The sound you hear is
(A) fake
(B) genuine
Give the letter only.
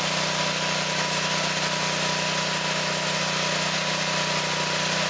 B